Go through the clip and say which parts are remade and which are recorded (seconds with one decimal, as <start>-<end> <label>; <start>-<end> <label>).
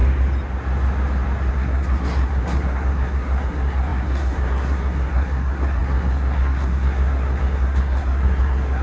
0.0-1.5 recorded; 1.5-8.8 remade